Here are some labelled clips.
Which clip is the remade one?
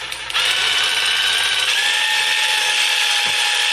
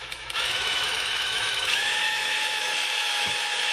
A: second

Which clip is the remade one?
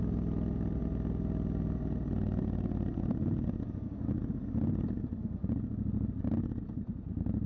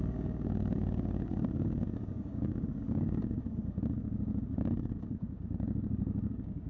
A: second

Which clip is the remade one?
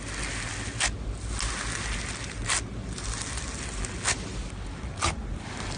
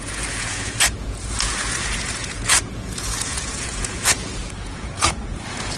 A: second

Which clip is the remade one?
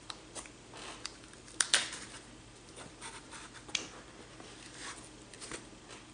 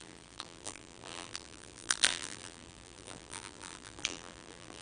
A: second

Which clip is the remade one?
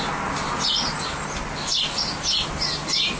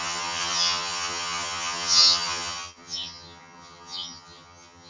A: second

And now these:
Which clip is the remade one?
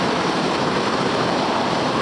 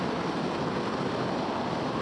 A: first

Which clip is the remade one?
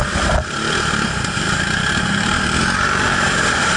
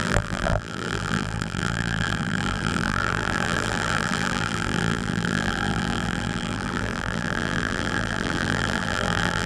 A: second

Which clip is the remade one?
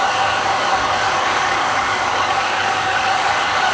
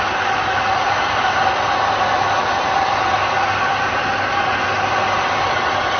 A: first